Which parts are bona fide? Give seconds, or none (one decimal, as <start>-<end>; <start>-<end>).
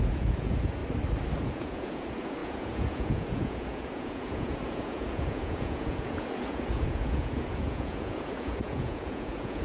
0.8-1.4